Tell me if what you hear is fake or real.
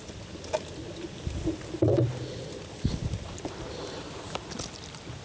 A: real